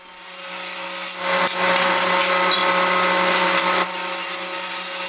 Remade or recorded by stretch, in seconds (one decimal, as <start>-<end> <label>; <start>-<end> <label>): 0.0-5.1 recorded